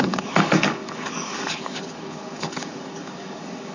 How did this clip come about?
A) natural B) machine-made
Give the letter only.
B